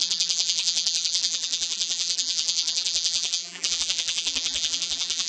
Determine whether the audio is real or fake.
fake